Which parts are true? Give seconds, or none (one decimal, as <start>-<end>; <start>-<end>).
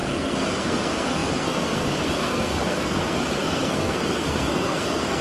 none